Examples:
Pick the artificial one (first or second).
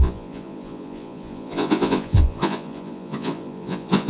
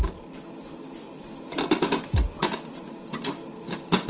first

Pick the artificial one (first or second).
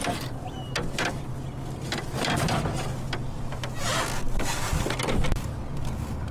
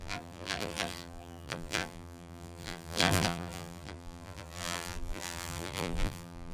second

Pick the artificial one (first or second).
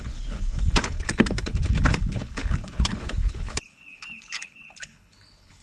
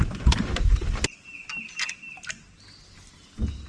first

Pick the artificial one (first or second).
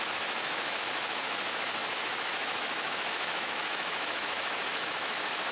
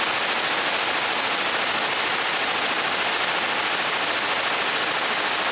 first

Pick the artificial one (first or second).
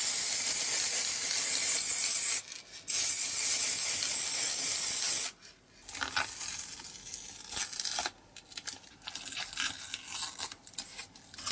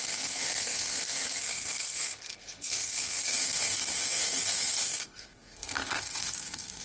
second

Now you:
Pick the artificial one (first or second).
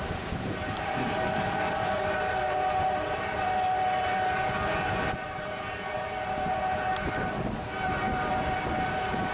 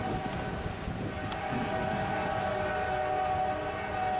first